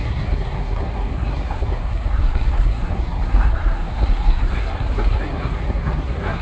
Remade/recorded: remade